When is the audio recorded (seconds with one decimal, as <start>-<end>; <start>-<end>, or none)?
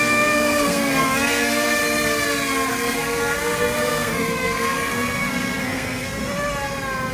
1.8-2.7; 6.2-7.1